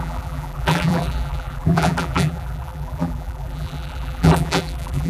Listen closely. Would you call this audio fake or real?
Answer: fake